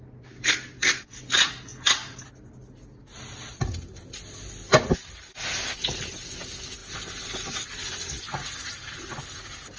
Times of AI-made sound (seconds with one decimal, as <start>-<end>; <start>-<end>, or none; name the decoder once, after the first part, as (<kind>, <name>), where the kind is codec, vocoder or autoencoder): 6.8-9.1 (vocoder, BigVGAN v2)